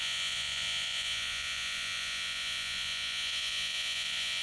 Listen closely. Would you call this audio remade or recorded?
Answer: remade